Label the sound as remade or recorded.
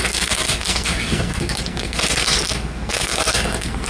remade